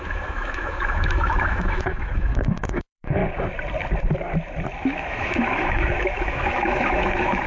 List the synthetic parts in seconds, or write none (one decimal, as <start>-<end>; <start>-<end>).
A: 0.0-3.2; 4.8-7.5